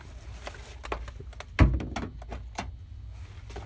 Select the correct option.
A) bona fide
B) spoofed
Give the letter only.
A